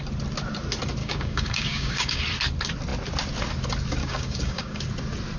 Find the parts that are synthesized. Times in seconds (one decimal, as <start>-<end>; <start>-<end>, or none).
1.0-2.2; 4.0-4.8